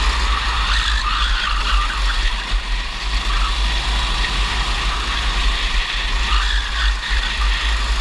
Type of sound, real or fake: real